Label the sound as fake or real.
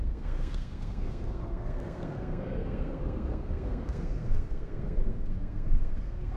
fake